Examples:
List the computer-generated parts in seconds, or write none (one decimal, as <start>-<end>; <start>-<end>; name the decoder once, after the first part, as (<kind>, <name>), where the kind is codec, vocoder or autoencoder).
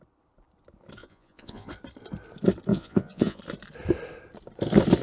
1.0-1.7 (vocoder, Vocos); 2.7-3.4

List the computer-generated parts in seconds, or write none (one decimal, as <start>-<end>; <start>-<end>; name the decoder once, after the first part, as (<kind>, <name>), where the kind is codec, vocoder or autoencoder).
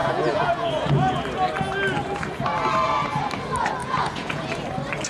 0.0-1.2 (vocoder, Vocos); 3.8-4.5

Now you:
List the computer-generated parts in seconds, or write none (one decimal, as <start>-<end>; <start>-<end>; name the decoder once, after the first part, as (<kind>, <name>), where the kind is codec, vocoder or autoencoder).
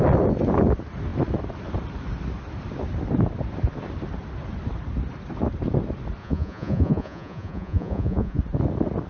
6.2-8.4 (vocoder, Vocos)